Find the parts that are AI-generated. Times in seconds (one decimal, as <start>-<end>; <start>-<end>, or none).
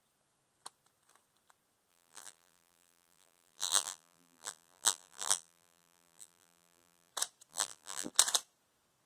1.9-7.1; 7.5-8.1